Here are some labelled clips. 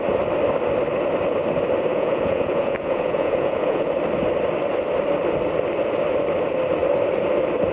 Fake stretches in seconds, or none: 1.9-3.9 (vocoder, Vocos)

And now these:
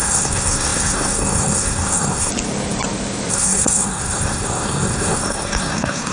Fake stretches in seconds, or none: 0.0-2.3 (codec, SNAC); 3.3-6.1

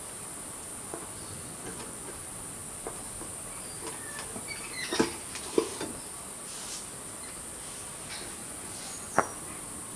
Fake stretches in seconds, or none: 0.7-2.2 (vocoder, Vocos); 8.4-9.2

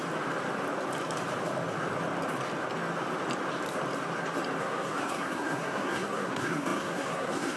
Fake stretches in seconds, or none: 4.6-7.6 (codec, SNAC)

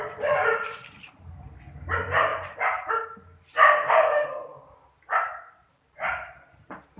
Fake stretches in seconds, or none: 0.4-1.3 (vocoder, BigVGAN v2); 2.3-2.9; 4.5-5.3

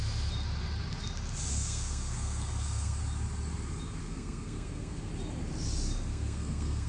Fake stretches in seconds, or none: 1.5-3.0 (codec, SNAC); 4.0-5.1; 6.1-6.9

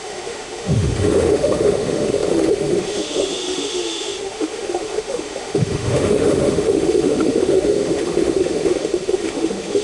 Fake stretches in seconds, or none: 0.0-9.8 (autoencoder, DAC-VAE)

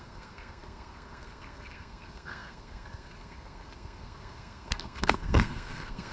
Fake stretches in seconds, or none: 0.0-6.1 (codec, SNAC)